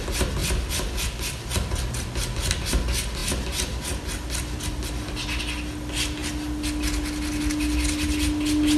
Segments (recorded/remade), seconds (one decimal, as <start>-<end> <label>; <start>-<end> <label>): 0.0-0.4 recorded; 0.4-1.8 remade; 1.8-8.8 recorded